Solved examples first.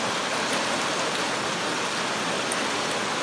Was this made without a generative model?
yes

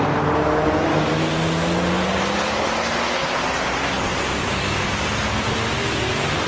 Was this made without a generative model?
yes